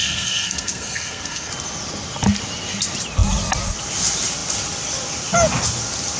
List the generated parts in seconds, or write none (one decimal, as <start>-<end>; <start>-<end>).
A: 0.0-1.5